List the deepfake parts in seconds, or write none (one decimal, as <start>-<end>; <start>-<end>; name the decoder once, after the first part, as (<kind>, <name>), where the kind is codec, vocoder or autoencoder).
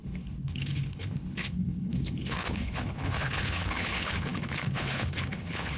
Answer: 0.0-5.8 (codec, HILCodec)